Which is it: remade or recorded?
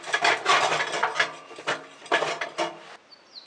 recorded